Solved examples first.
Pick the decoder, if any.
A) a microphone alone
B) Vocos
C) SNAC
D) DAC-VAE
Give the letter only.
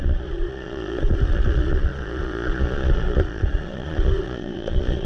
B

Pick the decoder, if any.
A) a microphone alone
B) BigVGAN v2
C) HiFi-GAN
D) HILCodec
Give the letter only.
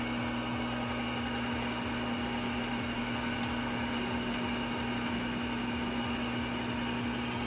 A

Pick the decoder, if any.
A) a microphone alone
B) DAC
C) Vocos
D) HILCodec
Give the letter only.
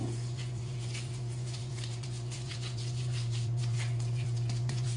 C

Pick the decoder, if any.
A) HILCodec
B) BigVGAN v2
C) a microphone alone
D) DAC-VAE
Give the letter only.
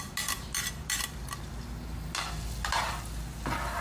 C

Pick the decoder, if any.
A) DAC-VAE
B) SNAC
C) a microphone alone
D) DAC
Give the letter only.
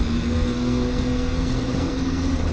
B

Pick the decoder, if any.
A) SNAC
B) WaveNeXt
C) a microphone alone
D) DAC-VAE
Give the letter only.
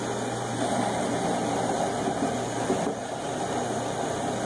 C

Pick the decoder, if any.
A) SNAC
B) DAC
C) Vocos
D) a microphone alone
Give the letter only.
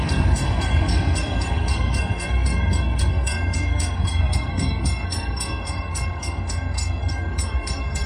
A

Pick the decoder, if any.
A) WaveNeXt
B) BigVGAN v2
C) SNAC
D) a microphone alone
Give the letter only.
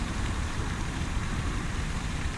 B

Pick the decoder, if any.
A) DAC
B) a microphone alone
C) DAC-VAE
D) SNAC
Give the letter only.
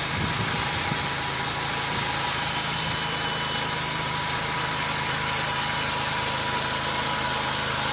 B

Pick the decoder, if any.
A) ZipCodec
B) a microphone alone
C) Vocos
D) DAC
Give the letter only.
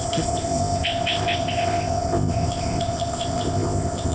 A